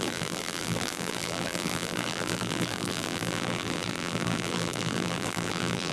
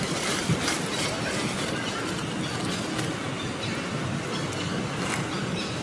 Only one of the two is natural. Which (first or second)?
second